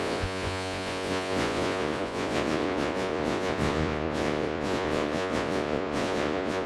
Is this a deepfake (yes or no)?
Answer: yes